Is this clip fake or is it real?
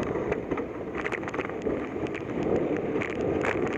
real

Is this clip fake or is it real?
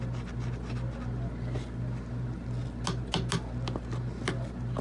real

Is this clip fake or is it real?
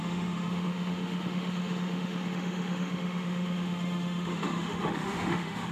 fake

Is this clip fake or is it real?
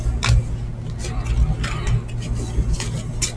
real